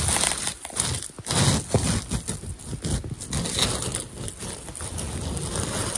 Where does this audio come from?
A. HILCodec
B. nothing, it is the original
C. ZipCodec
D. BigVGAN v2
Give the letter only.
B